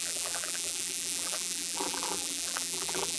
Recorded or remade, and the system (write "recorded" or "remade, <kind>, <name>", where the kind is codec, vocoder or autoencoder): remade, vocoder, BigVGAN v2